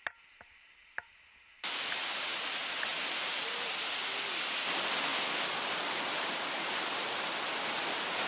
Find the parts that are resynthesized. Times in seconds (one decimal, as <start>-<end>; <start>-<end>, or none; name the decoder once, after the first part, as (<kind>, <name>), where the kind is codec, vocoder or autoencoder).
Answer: 2.9-3.5 (vocoder, BigVGAN v2); 5.1-7.2